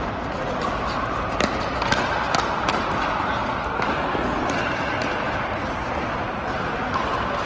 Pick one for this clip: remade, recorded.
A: recorded